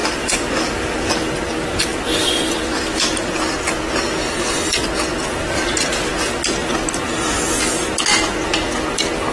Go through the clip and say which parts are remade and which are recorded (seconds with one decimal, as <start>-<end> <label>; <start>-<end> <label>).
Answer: 0.0-9.3 recorded